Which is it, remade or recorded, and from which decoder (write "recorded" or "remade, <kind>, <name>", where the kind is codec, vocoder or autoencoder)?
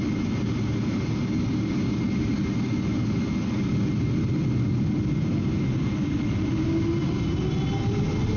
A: recorded